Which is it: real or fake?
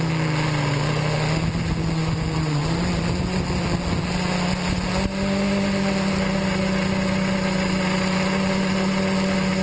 real